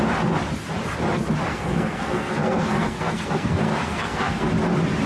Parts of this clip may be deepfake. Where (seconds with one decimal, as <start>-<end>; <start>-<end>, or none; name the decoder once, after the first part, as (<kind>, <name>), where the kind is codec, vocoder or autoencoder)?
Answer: 1.5-4.5 (codec, SNAC)